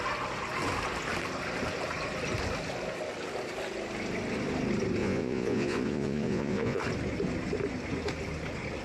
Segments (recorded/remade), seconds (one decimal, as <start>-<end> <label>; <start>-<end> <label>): 0.0-5.0 recorded; 5.0-6.8 remade; 6.8-8.8 recorded